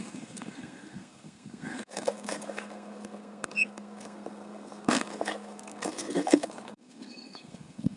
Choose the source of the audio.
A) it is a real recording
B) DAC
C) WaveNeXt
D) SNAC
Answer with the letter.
D